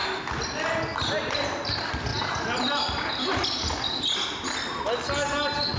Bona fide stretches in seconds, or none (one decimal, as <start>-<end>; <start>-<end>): 0.0-5.8